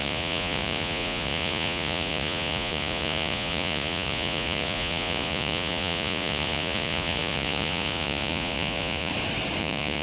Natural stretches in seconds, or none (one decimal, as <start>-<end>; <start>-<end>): 9.1-9.6